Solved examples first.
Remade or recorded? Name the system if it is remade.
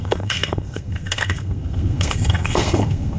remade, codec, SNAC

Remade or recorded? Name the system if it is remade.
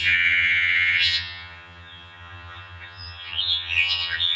remade, vocoder, HiFi-GAN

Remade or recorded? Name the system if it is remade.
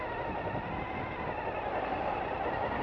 recorded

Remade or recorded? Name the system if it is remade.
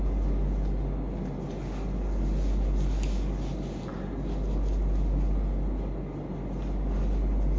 recorded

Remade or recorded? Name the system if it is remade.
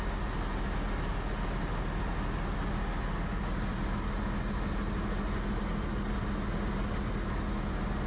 recorded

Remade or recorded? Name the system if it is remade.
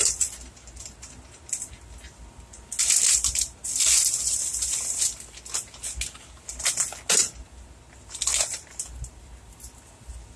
recorded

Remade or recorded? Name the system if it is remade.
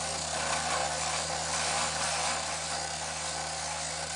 recorded